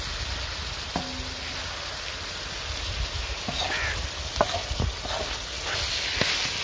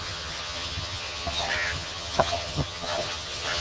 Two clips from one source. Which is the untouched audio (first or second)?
first